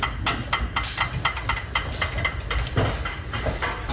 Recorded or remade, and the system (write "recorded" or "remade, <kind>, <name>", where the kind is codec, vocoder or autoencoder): recorded